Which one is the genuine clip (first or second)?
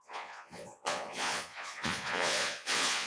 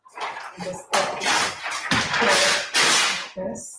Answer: second